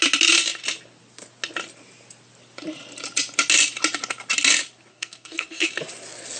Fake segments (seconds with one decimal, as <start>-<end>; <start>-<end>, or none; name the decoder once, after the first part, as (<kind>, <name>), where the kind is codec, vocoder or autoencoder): 4.9-5.7 (codec, SNAC)